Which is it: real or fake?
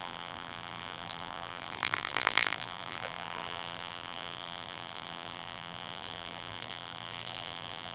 fake